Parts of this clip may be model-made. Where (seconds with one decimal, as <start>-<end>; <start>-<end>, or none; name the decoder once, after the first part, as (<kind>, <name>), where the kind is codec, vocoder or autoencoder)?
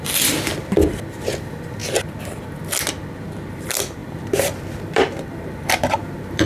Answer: 0.0-1.8 (vocoder, BigVGAN v2); 3.5-6.5